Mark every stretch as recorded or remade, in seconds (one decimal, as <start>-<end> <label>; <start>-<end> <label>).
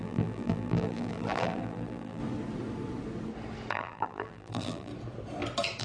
0.0-2.2 remade; 2.2-3.7 recorded; 3.7-4.9 remade; 4.9-5.8 recorded